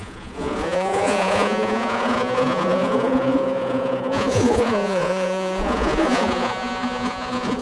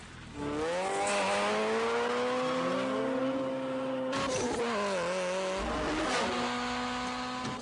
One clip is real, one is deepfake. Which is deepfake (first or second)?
first